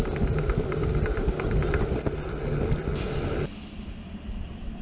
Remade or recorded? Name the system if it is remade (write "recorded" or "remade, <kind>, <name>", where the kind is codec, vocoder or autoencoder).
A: recorded